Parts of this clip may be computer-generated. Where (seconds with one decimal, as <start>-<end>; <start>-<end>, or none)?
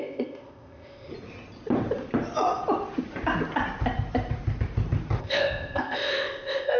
0.0-1.1; 5.2-6.8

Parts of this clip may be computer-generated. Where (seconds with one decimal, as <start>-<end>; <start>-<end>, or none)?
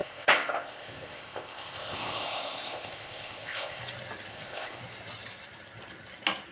0.0-3.8; 4.3-4.8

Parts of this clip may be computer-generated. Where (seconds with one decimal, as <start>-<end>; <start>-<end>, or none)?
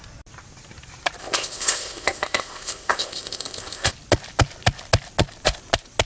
1.2-3.9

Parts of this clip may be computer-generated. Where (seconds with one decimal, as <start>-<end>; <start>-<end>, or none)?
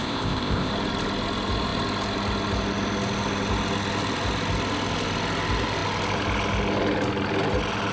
0.0-0.7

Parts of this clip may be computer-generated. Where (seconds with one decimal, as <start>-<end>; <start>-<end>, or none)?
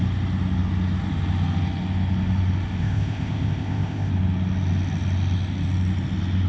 2.8-4.1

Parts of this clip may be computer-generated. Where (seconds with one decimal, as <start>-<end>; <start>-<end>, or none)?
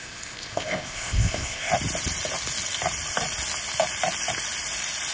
0.0-1.7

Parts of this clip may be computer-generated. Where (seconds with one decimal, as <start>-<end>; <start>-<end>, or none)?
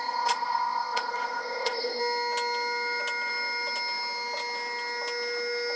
0.0-2.0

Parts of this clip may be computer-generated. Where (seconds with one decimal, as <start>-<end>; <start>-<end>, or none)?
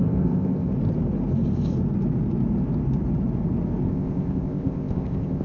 0.0-0.7; 3.9-5.4